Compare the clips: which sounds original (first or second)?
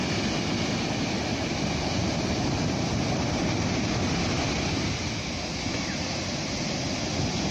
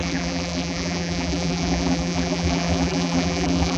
first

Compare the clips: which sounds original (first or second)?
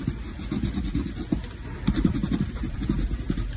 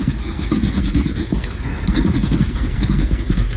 first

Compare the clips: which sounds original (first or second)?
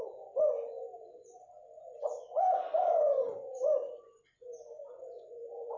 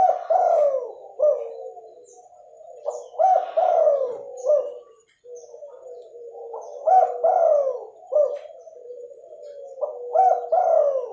second